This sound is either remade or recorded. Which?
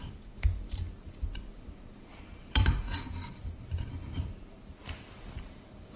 remade